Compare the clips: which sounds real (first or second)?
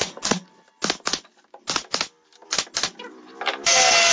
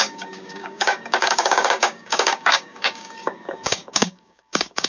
first